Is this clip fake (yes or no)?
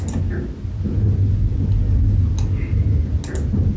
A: no